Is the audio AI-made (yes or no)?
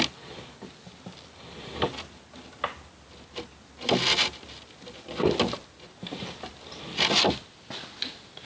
no